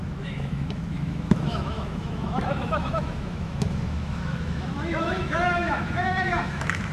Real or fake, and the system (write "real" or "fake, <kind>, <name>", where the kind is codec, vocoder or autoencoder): fake, autoencoder, DAC-VAE